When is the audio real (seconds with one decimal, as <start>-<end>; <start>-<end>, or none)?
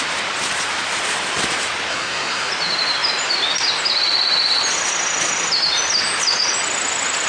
0.0-1.9; 2.5-7.3